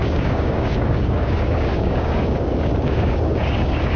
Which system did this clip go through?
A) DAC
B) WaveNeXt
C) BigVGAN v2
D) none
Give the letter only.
A